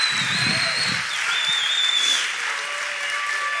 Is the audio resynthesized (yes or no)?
no